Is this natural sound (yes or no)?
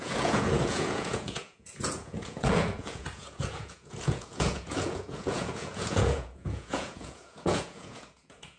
no